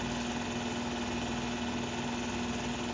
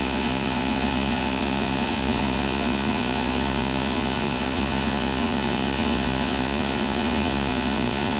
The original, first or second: first